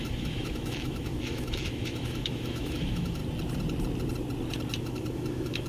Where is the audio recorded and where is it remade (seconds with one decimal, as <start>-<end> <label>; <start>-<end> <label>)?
0.0-3.2 remade; 3.2-4.8 recorded; 4.8-5.7 remade